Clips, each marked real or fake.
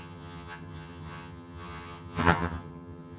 fake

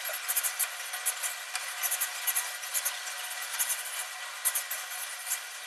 real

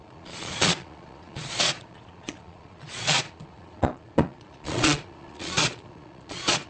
fake